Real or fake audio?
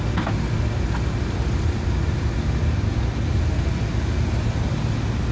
real